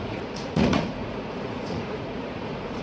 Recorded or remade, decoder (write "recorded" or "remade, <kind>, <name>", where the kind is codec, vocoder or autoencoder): remade, vocoder, Vocos